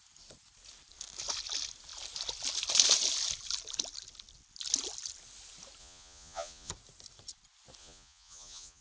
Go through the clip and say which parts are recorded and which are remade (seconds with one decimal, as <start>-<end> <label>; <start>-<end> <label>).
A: 0.0-5.8 recorded; 5.8-6.7 remade; 6.7-7.8 recorded; 7.8-8.8 remade